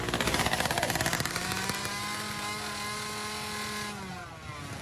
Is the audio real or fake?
real